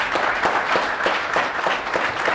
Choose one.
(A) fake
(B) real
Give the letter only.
B